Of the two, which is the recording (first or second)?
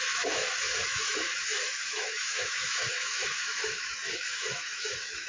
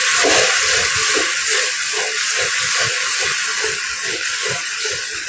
second